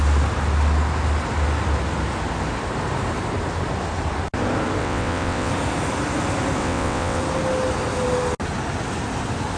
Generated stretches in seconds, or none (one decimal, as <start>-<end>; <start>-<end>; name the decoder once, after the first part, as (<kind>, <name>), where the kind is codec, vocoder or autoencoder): 4.8-5.5 (vocoder, WaveNeXt); 6.6-7.2